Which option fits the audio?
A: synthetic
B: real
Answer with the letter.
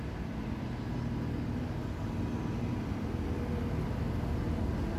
B